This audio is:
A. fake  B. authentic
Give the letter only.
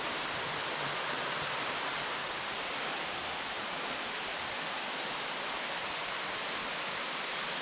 B